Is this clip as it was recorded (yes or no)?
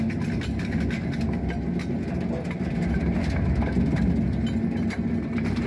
yes